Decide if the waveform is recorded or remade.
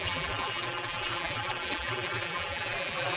remade